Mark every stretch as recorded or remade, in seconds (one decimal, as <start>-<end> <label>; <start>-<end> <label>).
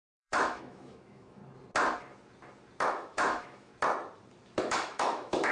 0.0-1.4 remade; 1.4-2.8 recorded; 2.8-3.7 remade; 3.7-4.6 recorded; 4.6-5.5 remade